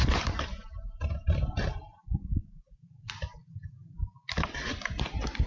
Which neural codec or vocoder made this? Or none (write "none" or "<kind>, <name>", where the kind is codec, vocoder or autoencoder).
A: vocoder, BigVGAN v2